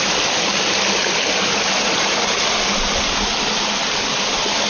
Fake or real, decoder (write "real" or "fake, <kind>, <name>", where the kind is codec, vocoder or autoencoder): real